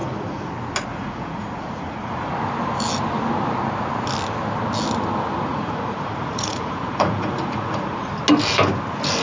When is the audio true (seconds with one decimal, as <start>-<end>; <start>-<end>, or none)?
0.5-0.9; 2.3-5.5; 8.1-9.2